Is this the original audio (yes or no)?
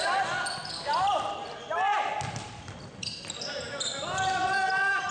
yes